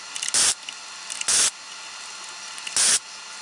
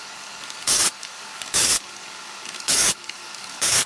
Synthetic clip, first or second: second